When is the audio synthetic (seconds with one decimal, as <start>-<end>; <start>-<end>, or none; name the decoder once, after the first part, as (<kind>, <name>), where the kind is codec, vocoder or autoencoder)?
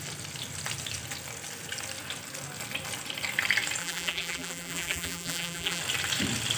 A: 3.8-5.8 (vocoder, BigVGAN v2)